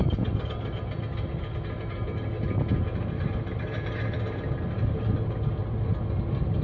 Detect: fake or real real